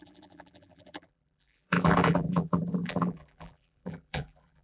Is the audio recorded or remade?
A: remade